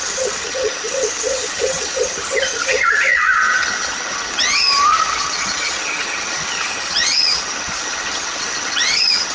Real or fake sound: fake